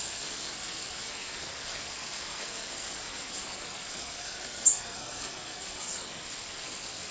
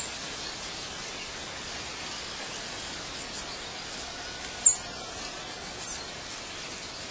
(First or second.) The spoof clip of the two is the first